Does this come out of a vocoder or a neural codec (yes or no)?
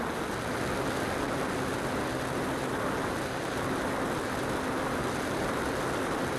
no